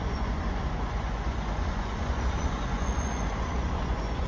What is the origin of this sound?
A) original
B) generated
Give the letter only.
B